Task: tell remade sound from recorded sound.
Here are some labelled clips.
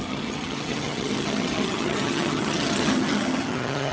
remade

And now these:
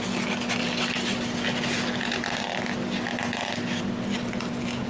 recorded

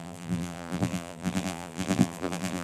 remade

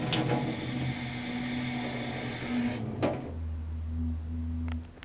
recorded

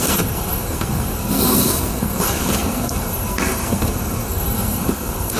remade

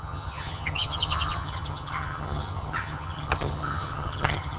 remade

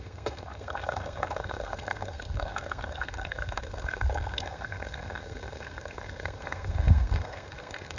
remade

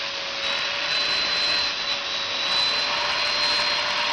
recorded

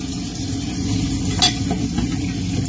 recorded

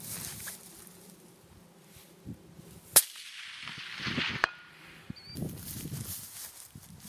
recorded